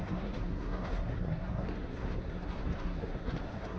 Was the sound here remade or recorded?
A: remade